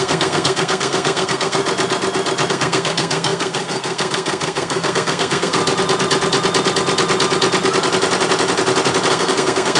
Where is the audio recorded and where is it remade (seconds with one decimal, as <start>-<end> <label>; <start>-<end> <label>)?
0.0-1.6 remade; 1.6-2.5 recorded; 2.5-5.6 remade; 5.6-9.1 recorded; 9.1-9.8 remade